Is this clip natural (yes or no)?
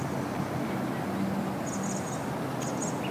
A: yes